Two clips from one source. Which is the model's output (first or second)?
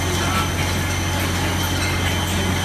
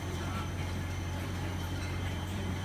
second